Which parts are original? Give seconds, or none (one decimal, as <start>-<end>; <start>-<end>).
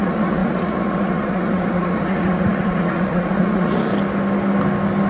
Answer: 3.9-5.1